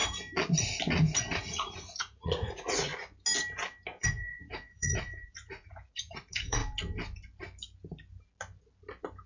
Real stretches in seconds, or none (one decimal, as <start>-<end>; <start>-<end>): 0.0-1.3; 2.9-4.0; 6.6-9.3